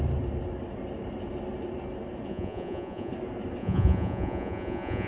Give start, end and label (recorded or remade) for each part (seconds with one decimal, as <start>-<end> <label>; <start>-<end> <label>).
0.0-2.3 recorded; 2.3-3.1 remade; 3.1-3.6 recorded; 3.6-5.1 remade